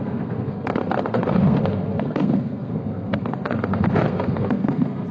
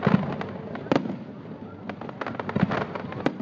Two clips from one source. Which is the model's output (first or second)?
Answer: first